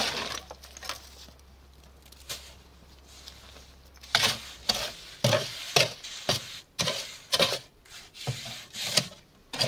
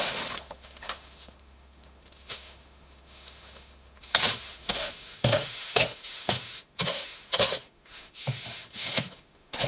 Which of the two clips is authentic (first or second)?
first